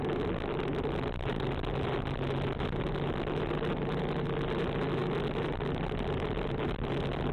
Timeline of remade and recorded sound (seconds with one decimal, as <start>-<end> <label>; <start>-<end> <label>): 0.0-7.3 recorded